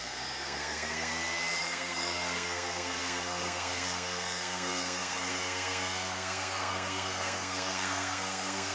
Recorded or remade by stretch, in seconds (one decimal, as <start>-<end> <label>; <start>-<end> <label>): 0.0-1.1 remade; 1.1-1.6 recorded; 1.6-8.7 remade